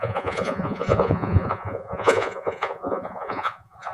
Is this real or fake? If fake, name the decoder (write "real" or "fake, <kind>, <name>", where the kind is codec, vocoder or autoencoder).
fake, vocoder, Vocos